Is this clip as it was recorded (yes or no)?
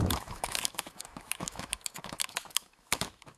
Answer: no